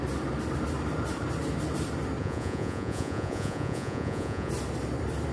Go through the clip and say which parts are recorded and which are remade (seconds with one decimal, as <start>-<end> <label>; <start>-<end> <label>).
0.0-2.2 recorded; 2.2-4.5 remade; 4.5-5.3 recorded